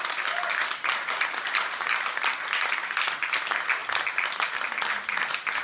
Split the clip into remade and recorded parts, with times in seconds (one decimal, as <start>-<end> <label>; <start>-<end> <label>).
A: 0.0-0.8 recorded; 0.8-2.3 remade; 2.3-5.6 recorded